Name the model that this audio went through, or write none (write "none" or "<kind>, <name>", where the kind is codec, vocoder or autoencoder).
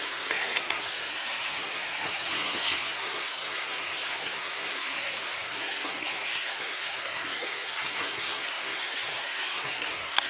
codec, SNAC